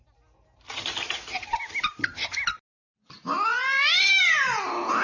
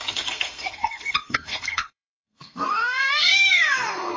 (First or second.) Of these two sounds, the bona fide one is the first